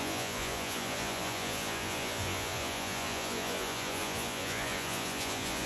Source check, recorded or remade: remade